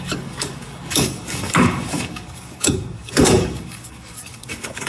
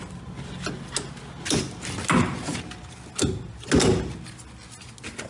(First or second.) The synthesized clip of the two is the first